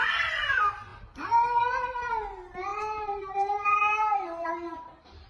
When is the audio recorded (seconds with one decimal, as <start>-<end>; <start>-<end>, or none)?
0.9-1.6